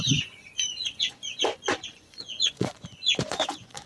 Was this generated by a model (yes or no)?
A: yes